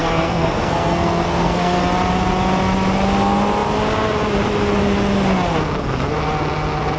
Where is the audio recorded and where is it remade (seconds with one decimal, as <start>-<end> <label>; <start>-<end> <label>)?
0.0-1.8 remade; 1.8-7.0 recorded